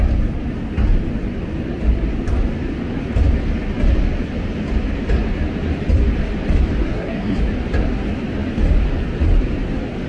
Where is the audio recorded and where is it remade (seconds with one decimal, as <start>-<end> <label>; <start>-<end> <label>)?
0.0-6.8 recorded; 6.8-7.4 remade; 7.4-10.1 recorded